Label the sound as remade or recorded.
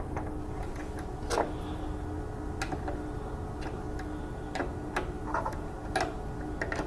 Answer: recorded